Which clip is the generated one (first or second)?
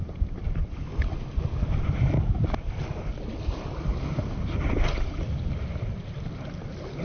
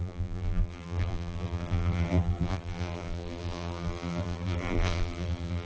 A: second